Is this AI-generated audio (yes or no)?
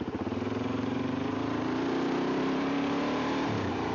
yes